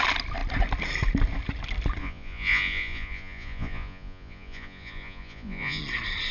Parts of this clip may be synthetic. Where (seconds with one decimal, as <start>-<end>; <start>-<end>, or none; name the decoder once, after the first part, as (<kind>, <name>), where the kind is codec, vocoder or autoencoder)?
2.0-5.8 (vocoder, Vocos)